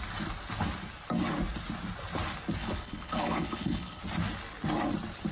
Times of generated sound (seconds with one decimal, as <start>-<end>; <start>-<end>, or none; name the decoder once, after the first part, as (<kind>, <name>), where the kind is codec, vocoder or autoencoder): 2.6-4.0 (codec, HILCodec)